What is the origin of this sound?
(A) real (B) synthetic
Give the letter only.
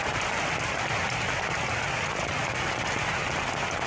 A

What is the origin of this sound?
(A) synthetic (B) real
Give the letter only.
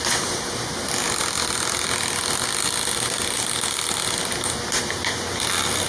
B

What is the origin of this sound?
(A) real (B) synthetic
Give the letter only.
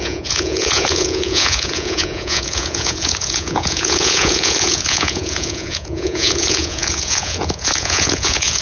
B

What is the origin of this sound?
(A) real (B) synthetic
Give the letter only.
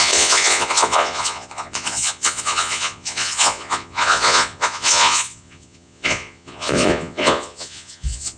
B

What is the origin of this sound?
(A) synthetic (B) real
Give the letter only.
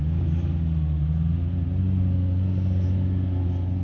B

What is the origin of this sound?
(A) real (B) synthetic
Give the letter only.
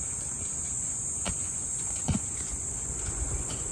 B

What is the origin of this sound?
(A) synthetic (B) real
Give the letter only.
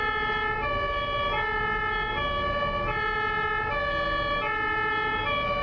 B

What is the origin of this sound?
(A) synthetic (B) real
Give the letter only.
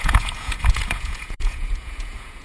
A